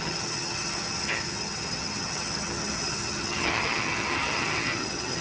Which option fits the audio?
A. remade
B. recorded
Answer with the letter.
A